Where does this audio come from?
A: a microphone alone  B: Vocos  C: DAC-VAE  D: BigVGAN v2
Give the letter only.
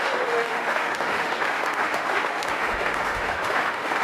C